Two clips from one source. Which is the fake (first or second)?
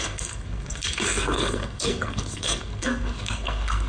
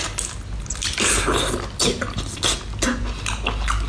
first